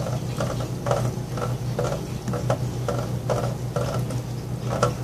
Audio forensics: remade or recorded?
recorded